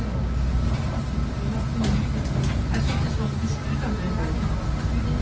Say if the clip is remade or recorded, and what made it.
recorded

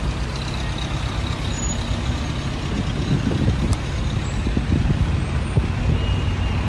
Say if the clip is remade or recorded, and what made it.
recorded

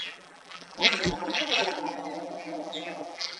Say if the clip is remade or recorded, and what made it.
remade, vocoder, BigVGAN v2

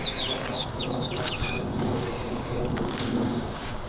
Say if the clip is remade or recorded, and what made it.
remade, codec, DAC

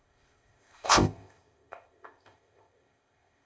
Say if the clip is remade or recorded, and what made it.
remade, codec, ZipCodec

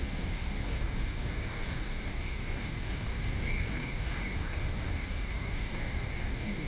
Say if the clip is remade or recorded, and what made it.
remade, codec, DAC